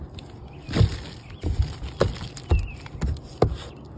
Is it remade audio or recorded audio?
recorded